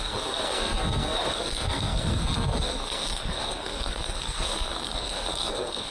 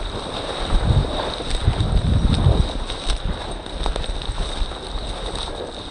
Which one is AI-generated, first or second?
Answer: first